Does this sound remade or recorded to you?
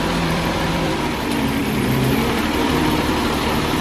remade